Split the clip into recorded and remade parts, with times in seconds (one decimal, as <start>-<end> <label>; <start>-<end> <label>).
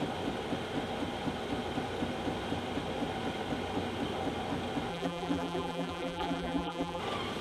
0.0-4.9 recorded; 4.9-7.0 remade; 7.0-7.4 recorded